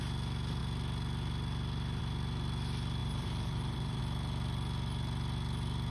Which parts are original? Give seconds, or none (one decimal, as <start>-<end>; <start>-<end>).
0.0-3.0; 4.0-5.9